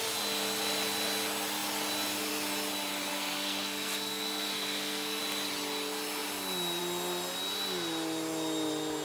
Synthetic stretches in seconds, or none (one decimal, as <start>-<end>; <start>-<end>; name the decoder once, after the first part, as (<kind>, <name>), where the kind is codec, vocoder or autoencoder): 3.1-5.2 (codec, SNAC)